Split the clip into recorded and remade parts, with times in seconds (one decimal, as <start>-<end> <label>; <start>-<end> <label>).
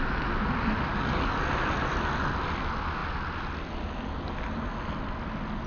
0.0-0.9 recorded; 0.9-1.4 remade; 1.4-5.7 recorded